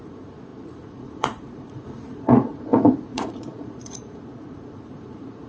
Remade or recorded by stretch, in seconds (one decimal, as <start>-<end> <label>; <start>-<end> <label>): 0.0-5.5 remade